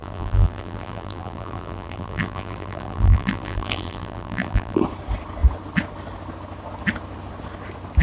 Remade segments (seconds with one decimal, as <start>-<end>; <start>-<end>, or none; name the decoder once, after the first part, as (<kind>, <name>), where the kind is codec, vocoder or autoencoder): 0.0-4.8 (vocoder, BigVGAN v2)